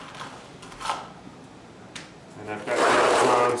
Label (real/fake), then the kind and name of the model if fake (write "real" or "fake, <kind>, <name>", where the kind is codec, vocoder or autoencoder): real